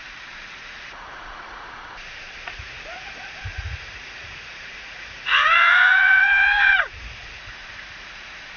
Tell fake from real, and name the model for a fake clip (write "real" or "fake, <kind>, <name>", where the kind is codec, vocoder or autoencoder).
fake, vocoder, Vocos